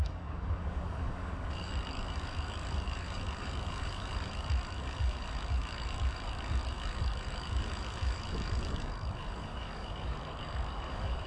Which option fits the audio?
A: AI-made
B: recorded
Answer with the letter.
A